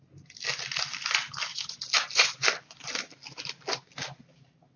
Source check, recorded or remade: recorded